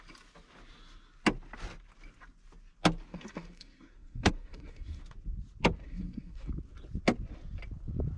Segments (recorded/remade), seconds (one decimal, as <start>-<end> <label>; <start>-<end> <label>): 0.0-3.1 recorded; 3.1-5.0 remade; 5.0-5.8 recorded; 5.8-6.5 remade; 6.5-8.2 recorded